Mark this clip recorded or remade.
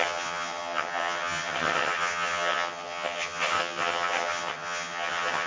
remade